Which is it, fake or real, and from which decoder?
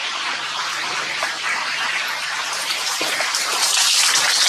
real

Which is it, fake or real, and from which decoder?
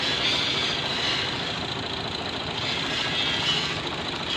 real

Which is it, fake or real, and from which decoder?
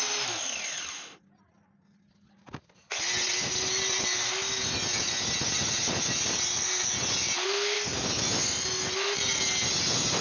real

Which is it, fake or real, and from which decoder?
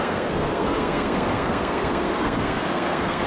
fake, codec, SNAC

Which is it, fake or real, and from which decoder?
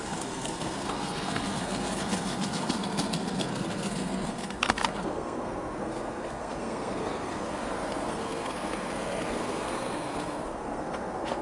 fake, codec, SNAC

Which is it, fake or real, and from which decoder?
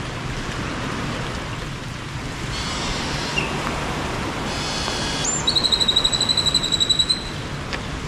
real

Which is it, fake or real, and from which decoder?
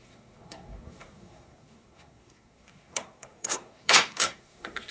fake, codec, SNAC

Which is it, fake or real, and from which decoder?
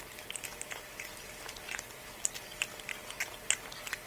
real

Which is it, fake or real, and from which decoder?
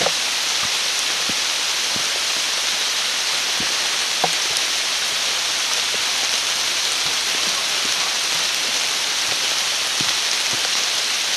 real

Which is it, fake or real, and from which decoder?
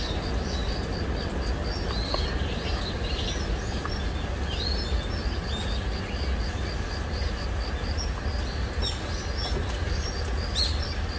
real